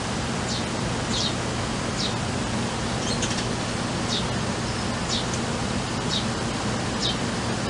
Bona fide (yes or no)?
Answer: yes